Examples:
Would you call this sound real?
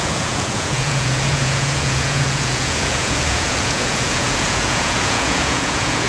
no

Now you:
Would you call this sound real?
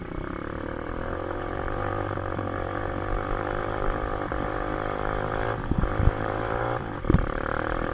no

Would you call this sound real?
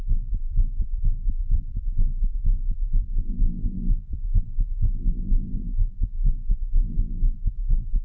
no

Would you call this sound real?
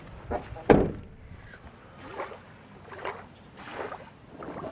yes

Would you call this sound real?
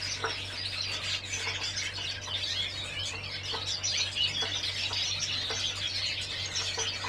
yes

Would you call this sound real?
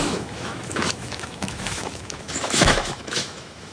no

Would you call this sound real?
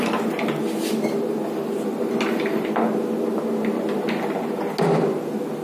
yes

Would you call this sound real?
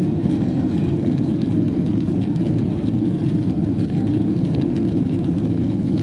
no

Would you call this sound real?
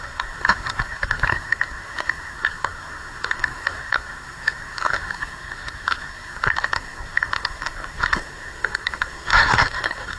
no